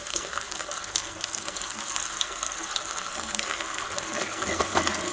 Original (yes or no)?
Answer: no